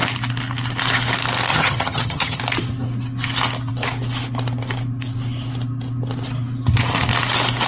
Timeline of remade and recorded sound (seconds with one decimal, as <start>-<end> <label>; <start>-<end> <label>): 0.0-1.5 recorded; 1.5-2.4 remade; 2.4-7.7 recorded